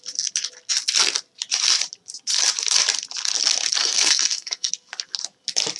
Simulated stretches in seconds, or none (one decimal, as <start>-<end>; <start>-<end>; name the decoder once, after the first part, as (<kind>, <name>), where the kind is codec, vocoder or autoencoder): 3.8-4.7 (codec, SNAC)